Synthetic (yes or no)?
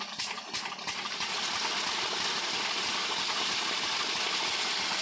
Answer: no